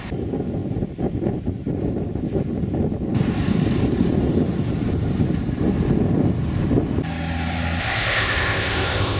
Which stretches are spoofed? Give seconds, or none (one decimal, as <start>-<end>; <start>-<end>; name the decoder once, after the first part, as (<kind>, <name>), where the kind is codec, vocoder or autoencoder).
7.8-9.2 (codec, ZipCodec)